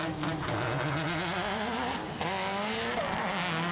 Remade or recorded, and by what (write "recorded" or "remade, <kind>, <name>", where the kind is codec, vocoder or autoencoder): recorded